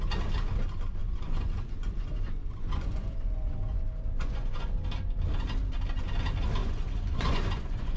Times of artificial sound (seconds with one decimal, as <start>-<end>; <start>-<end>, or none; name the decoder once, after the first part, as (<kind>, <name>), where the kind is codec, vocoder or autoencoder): 1.0-4.7 (vocoder, Vocos); 6.6-8.0